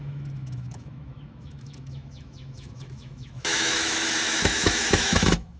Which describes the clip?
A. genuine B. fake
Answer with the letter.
B